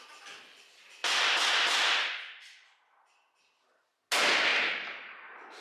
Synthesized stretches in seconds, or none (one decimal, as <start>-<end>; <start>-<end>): none